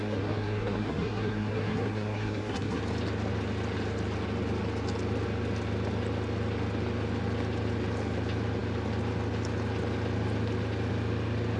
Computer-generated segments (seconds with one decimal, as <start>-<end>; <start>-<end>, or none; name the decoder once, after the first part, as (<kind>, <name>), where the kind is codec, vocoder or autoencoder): 0.0-2.8 (codec, SNAC)